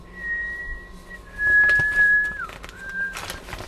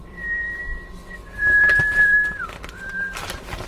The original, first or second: first